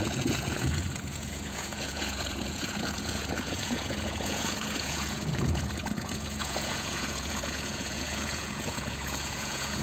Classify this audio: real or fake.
fake